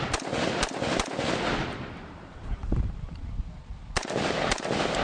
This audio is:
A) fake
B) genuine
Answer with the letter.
B